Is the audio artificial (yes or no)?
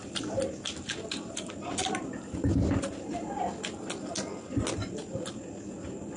no